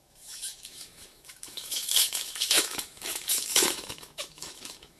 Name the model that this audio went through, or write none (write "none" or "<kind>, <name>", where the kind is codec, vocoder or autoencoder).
autoencoder, DAC-VAE